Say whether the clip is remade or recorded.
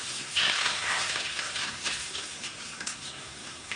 remade